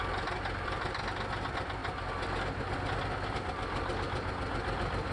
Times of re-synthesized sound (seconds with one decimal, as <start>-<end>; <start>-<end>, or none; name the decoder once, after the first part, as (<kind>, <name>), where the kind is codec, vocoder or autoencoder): none